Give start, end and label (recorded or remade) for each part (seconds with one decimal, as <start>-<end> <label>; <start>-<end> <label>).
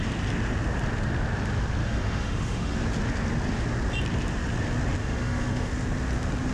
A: 0.0-1.8 recorded; 1.8-2.8 remade; 2.8-5.0 recorded; 5.0-5.7 remade; 5.7-6.5 recorded